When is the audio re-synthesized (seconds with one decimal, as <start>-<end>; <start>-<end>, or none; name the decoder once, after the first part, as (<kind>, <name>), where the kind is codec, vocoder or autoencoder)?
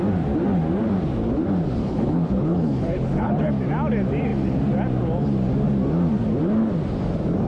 1.8-3.5 (codec, HILCodec)